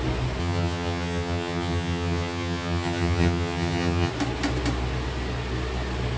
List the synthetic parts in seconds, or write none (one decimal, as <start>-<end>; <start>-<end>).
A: 0.4-4.1